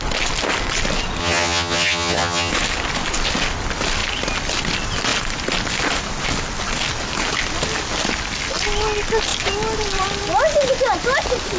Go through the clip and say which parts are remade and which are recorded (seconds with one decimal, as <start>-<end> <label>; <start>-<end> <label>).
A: 0.0-1.2 recorded; 1.2-2.5 remade; 2.5-11.6 recorded